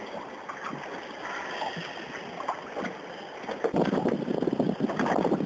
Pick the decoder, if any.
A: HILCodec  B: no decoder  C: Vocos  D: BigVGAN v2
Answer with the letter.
B